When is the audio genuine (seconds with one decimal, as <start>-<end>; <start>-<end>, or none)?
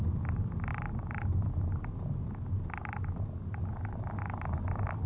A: 0.0-5.1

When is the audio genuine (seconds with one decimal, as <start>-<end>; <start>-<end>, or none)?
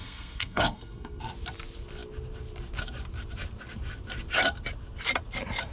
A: 1.2-5.7